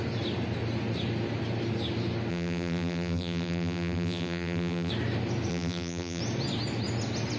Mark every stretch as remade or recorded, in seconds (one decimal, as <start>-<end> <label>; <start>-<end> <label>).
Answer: 0.0-2.3 recorded; 2.3-4.9 remade; 4.9-5.5 recorded; 5.5-6.2 remade; 6.2-7.4 recorded